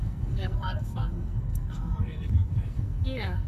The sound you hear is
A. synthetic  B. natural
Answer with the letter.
A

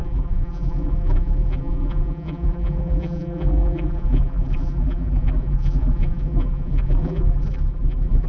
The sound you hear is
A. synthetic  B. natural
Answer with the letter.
A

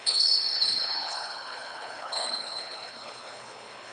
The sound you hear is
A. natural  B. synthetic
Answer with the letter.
B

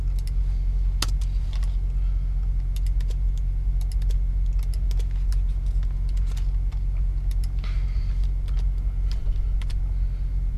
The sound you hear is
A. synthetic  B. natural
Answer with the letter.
B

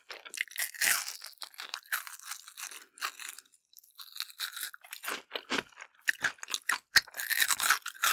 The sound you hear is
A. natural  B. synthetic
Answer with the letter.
A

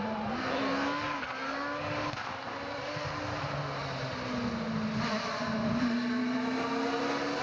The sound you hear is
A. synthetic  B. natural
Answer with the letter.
B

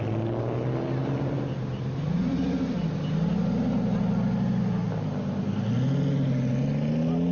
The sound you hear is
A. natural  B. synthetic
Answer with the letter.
A